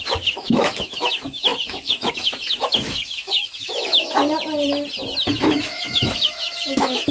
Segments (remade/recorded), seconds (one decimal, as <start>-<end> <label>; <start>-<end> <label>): 0.0-4.2 remade; 4.2-5.3 recorded; 5.3-7.1 remade